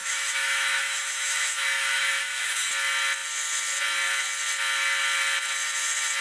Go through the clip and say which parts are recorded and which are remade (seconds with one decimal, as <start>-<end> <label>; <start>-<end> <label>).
0.0-2.7 remade; 2.7-6.2 recorded